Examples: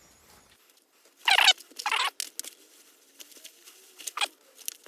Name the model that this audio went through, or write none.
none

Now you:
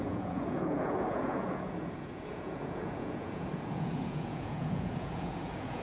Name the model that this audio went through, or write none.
vocoder, Vocos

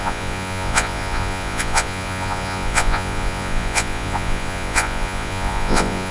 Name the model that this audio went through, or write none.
vocoder, Vocos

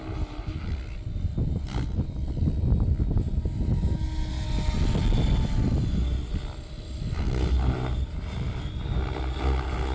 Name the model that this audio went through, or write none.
none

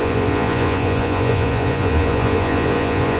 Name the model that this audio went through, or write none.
vocoder, Vocos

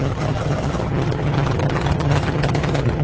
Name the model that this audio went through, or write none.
vocoder, HiFi-GAN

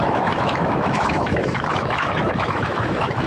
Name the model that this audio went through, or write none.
autoencoder, DAC-VAE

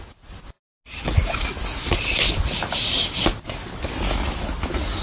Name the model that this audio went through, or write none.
none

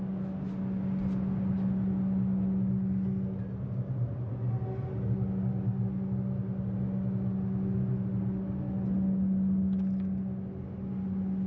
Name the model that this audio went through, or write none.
none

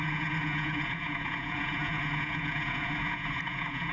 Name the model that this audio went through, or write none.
vocoder, Vocos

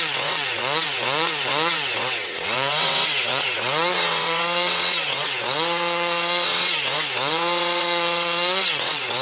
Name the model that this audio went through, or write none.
vocoder, WaveNeXt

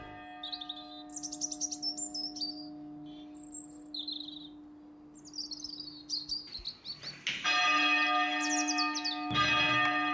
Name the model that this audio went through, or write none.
none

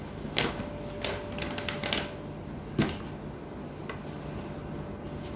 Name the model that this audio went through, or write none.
none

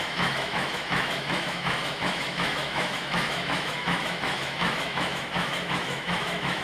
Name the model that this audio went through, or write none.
autoencoder, DAC-VAE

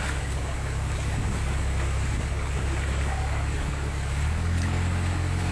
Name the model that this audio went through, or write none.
codec, DAC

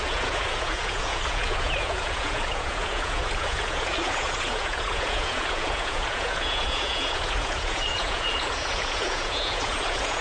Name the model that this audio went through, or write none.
vocoder, Vocos